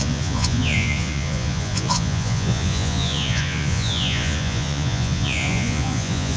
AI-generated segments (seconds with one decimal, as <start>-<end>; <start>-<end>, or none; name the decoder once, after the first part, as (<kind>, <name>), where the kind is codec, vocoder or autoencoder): 0.0-6.4 (vocoder, Vocos)